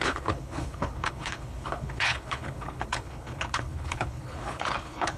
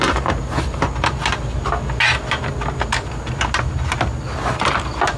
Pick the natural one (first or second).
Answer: second